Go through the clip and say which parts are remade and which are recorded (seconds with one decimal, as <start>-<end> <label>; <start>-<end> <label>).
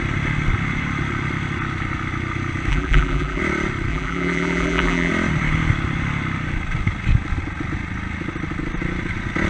0.0-2.7 recorded; 2.7-3.4 remade; 3.4-3.9 recorded; 3.9-5.1 remade; 5.1-9.5 recorded